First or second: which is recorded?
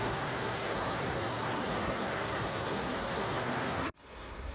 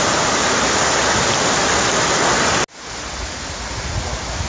second